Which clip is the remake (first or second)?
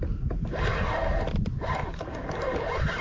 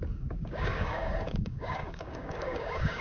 second